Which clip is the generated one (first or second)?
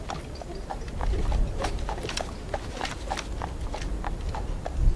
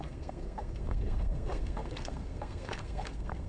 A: second